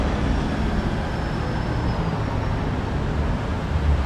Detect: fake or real real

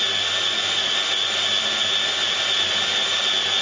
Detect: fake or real real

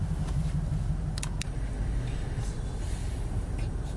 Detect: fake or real real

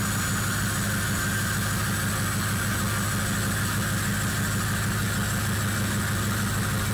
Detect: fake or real real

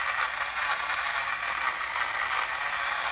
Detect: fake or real real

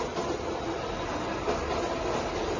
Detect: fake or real real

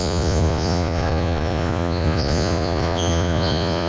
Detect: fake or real fake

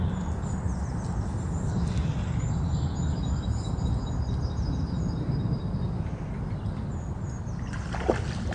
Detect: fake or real real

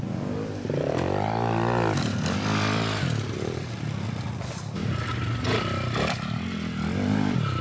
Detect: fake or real real